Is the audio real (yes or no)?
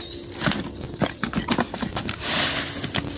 yes